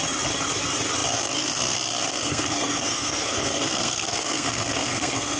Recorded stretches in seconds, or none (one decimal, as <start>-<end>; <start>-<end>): 0.0-2.1